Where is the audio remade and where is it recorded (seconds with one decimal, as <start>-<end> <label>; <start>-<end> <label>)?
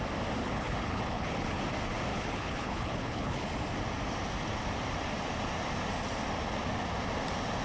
0.0-0.4 recorded; 0.4-1.6 remade; 1.6-2.1 recorded; 2.1-3.5 remade; 3.5-7.6 recorded